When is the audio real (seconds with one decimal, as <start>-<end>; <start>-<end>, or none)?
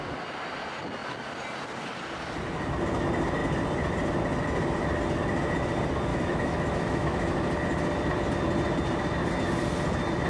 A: 0.0-6.1; 7.3-10.3